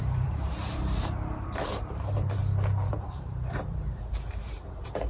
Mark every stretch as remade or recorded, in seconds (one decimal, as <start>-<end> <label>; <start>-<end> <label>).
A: 0.0-2.4 remade; 2.4-2.9 recorded; 2.9-5.1 remade